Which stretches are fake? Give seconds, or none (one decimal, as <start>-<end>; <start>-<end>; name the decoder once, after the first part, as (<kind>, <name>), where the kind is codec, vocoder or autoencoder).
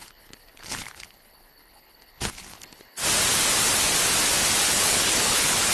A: 0.0-3.0 (codec, HILCodec); 4.6-5.7